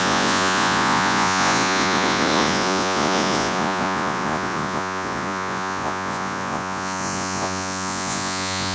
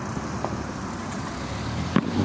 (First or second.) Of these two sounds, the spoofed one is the first